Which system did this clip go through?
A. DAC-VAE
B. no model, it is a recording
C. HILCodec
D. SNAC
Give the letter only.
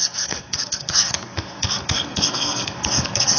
D